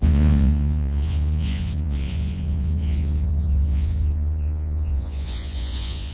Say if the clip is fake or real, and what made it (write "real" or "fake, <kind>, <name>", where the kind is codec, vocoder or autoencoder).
fake, vocoder, Vocos